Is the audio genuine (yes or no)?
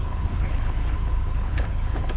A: no